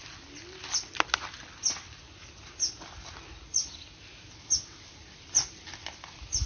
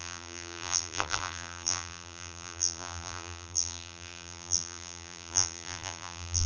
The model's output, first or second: second